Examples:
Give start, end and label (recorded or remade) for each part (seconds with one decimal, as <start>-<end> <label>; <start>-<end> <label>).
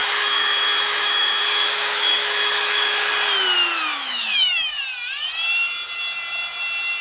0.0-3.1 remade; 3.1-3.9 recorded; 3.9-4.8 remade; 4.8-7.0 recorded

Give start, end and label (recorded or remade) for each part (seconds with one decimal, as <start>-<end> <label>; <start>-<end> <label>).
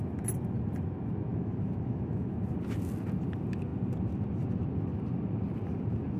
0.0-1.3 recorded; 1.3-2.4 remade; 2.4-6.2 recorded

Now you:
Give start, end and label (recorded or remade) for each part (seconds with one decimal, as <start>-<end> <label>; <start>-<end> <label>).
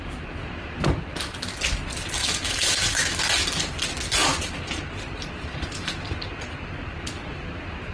0.0-2.2 recorded; 2.2-3.2 remade; 3.2-7.9 recorded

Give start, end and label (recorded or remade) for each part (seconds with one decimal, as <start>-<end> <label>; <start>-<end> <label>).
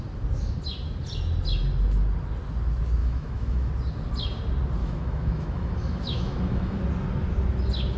0.0-3.0 recorded; 3.0-3.7 remade; 3.7-4.8 recorded; 4.8-6.8 remade; 6.8-8.0 recorded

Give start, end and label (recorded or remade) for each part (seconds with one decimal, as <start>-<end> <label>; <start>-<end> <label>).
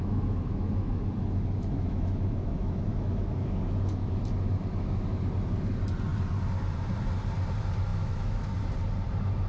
0.0-5.2 remade; 5.2-7.9 recorded; 7.9-8.5 remade; 8.5-9.5 recorded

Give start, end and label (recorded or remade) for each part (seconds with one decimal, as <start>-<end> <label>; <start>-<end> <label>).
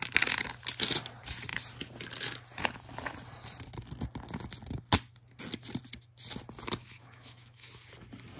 0.0-6.8 recorded; 6.8-7.7 remade; 7.7-8.4 recorded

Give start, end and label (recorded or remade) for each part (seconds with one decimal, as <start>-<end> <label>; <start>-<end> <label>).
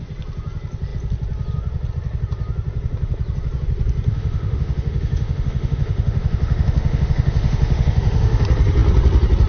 0.0-4.1 recorded; 4.1-8.4 remade; 8.4-9.5 recorded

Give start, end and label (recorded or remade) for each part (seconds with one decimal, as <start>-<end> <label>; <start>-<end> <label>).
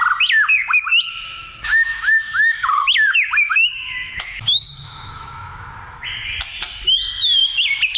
0.0-0.9 recorded; 0.9-5.7 remade; 5.7-8.0 recorded